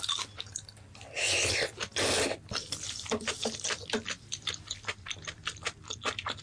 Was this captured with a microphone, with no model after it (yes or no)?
yes